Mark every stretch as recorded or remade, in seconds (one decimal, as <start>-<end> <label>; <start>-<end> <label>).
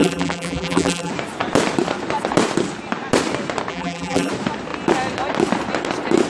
0.0-1.1 remade; 1.1-3.7 recorded; 3.7-4.3 remade; 4.3-6.3 recorded